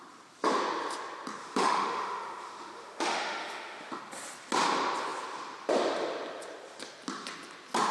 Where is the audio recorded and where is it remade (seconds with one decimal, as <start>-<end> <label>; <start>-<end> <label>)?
0.0-1.4 recorded; 1.4-4.0 remade; 4.0-7.9 recorded

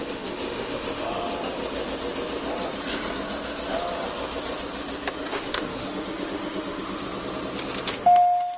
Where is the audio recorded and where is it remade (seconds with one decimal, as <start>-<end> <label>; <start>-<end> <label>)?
0.0-1.3 remade; 1.3-5.3 recorded; 5.3-7.0 remade; 7.0-7.9 recorded; 7.9-8.6 remade

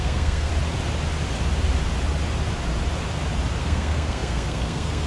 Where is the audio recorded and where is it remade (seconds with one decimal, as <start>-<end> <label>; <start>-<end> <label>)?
0.0-0.5 remade; 0.5-3.6 recorded; 3.6-5.1 remade

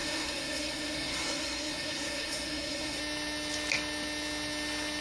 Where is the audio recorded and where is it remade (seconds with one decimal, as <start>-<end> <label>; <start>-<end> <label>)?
0.0-3.0 remade; 3.0-5.0 recorded

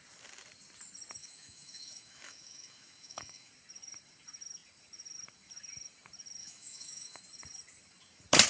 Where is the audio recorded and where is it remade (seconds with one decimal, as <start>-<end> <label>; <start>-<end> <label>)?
0.0-1.2 recorded; 1.2-3.5 remade; 3.5-6.4 recorded; 6.4-7.2 remade; 7.2-8.5 recorded

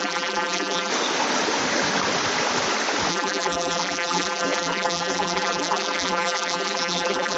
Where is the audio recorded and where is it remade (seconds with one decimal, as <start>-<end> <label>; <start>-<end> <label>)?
0.0-0.9 remade; 0.9-3.1 recorded; 3.1-7.4 remade

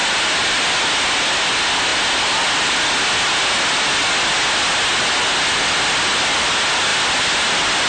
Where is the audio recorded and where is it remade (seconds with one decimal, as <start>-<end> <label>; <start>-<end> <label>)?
0.0-7.9 recorded